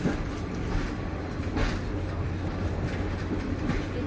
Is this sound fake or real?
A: real